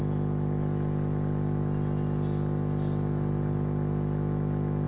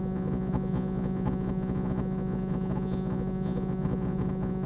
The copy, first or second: second